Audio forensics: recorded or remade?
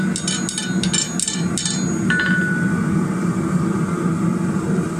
recorded